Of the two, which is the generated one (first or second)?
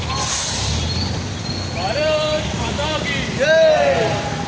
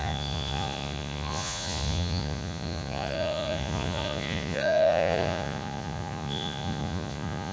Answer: second